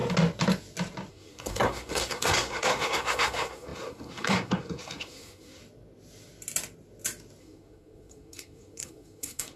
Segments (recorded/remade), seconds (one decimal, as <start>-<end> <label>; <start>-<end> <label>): 0.0-1.1 recorded; 1.1-5.6 remade; 5.6-7.4 recorded; 7.4-9.6 remade